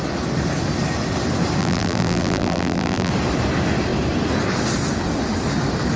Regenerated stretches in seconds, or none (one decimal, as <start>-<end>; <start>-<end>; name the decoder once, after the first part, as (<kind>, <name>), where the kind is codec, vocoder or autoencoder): 1.6-3.1 (vocoder, BigVGAN v2)